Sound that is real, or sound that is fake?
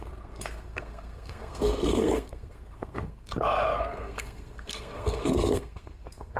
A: fake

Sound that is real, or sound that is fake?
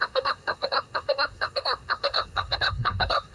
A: fake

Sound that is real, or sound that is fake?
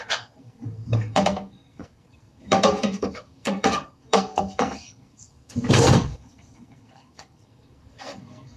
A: fake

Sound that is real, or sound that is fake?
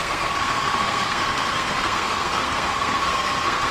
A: fake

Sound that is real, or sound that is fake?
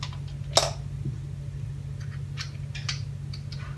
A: real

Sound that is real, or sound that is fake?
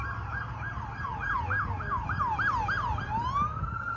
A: real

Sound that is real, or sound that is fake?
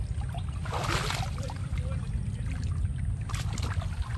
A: real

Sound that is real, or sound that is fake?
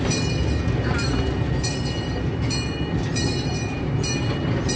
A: real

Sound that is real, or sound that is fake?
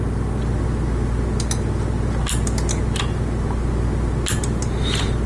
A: real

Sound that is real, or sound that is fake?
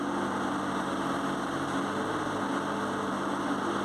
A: real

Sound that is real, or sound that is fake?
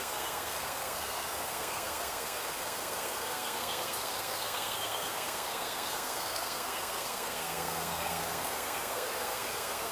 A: fake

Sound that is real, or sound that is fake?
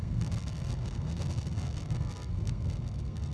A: fake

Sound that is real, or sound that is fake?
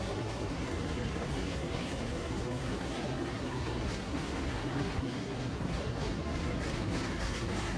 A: fake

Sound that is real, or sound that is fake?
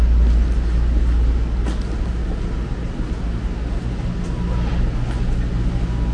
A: real